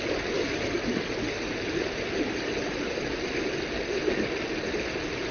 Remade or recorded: recorded